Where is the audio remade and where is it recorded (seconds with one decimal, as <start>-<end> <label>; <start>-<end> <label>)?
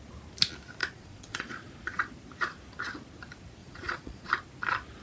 0.0-0.8 recorded; 0.8-1.7 remade; 1.7-3.6 recorded; 3.6-4.3 remade; 4.3-5.0 recorded